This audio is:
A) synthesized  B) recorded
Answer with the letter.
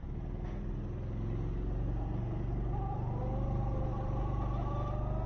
B